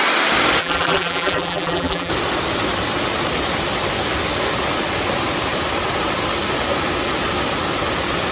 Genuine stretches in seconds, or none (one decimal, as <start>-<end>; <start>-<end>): 0.0-0.6; 2.1-8.3